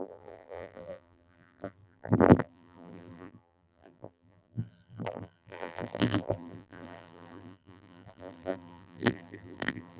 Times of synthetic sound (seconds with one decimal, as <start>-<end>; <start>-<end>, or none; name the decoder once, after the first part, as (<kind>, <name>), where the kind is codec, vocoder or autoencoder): 0.0-10.0 (vocoder, BigVGAN v2)